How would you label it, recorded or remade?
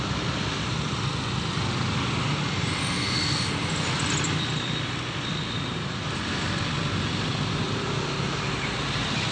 recorded